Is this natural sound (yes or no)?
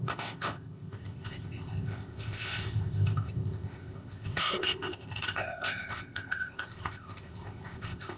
no